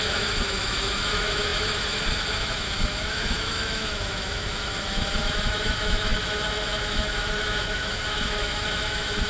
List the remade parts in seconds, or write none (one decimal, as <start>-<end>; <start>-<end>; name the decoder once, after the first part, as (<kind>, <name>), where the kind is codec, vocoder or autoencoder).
0.0-9.3 (autoencoder, DAC-VAE)